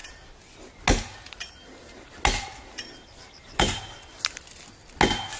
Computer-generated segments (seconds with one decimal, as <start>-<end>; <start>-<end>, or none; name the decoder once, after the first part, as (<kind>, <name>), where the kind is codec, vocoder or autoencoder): none